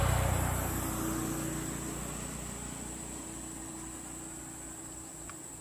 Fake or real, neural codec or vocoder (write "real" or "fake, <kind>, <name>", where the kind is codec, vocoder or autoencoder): real